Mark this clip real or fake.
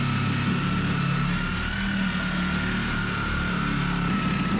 real